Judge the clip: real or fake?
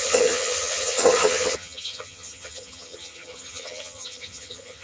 fake